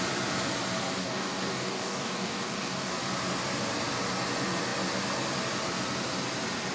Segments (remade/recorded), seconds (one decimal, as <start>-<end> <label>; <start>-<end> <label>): 0.0-1.0 recorded; 1.0-2.9 remade; 2.9-6.7 recorded